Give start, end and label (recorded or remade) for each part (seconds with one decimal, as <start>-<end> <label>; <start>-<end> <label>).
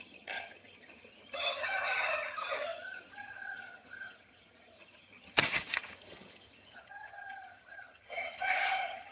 0.0-9.1 remade